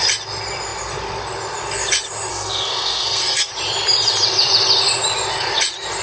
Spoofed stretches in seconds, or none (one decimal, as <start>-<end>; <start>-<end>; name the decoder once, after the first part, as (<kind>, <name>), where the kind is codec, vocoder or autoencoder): 2.3-3.5 (codec, SNAC)